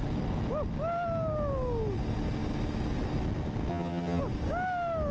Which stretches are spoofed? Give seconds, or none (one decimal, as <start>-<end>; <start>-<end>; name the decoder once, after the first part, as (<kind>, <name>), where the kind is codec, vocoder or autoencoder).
3.7-4.2 (vocoder, HiFi-GAN)